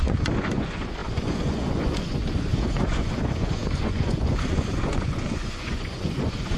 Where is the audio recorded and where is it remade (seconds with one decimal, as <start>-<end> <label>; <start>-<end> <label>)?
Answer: 0.0-6.6 remade